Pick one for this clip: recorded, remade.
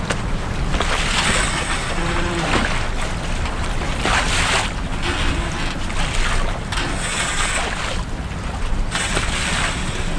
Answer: recorded